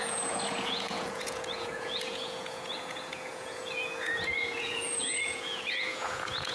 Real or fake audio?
fake